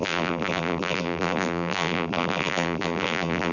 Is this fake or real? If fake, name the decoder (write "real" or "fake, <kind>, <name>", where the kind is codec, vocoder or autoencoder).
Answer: fake, vocoder, BigVGAN v2